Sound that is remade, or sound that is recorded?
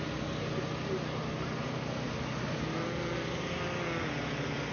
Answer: recorded